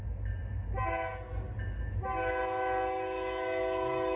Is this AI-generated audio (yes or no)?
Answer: no